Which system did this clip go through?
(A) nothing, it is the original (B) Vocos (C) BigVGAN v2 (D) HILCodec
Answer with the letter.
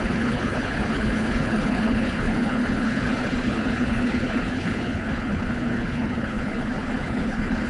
D